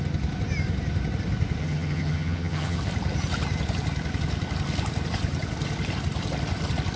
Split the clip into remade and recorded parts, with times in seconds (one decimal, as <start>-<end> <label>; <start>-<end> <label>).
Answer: 0.0-1.6 recorded; 1.6-2.8 remade; 2.8-7.0 recorded